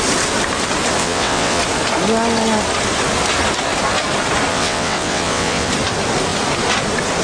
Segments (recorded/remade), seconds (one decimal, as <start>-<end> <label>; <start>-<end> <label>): 0.0-1.0 recorded; 1.0-1.6 remade; 1.6-4.5 recorded; 4.5-5.7 remade; 5.7-7.2 recorded